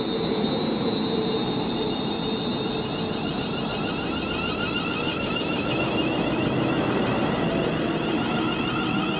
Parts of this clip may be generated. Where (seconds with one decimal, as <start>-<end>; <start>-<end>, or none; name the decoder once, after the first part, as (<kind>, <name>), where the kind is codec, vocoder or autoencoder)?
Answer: 5.1-6.9 (autoencoder, DAC-VAE)